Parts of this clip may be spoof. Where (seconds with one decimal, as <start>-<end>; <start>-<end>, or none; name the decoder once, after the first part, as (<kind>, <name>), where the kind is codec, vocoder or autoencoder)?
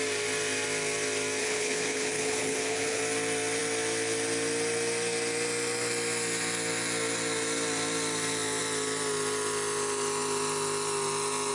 1.4-3.0 (codec, HILCodec)